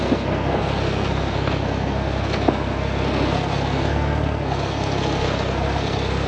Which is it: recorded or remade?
remade